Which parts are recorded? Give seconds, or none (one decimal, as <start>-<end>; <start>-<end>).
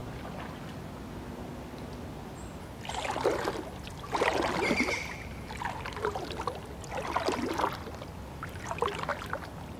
0.0-9.8